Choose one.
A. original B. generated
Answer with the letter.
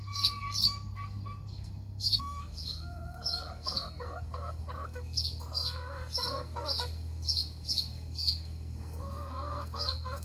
B